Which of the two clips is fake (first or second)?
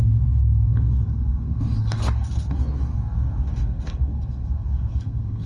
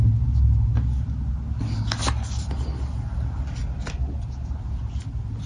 first